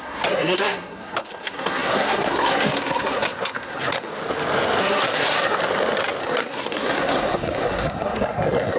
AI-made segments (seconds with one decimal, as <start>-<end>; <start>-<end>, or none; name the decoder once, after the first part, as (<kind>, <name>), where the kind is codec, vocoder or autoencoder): 0.0-4.1 (codec, SNAC); 4.8-5.6; 6.2-8.8